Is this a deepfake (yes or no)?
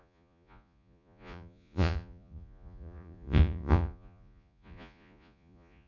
yes